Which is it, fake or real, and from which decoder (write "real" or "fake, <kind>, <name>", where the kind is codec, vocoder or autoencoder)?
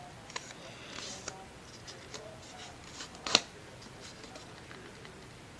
real